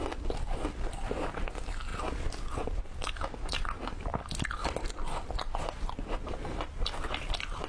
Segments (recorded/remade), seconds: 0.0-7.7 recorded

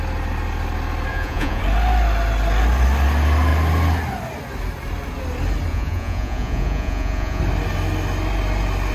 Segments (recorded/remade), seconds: 0.0-1.1 recorded; 1.1-1.6 remade; 1.6-5.7 recorded; 5.7-7.4 remade; 7.4-8.9 recorded

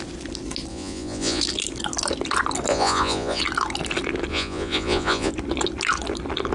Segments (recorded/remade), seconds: 0.0-0.7 recorded; 0.7-1.4 remade; 1.4-2.7 recorded; 2.7-3.4 remade; 3.4-4.3 recorded; 4.3-5.3 remade; 5.3-6.5 recorded

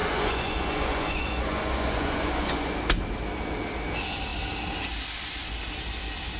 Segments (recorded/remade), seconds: 0.0-2.7 remade; 2.7-6.4 recorded